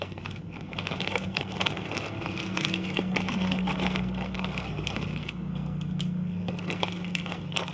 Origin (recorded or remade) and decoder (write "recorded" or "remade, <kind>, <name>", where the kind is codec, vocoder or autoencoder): remade, codec, SNAC